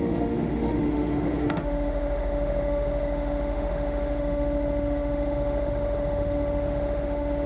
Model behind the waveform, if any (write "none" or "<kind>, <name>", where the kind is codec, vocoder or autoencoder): autoencoder, DAC-VAE